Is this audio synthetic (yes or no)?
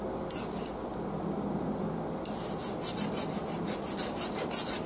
no